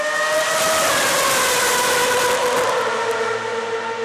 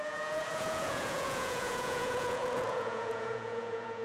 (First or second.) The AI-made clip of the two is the second